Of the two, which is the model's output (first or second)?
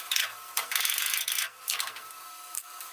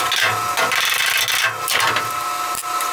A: first